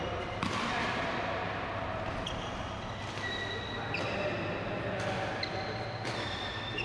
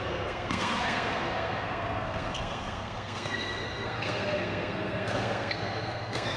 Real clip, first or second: first